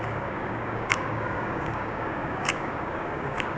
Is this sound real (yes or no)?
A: no